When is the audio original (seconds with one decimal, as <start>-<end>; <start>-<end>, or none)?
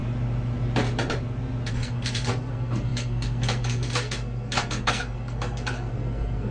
0.0-1.7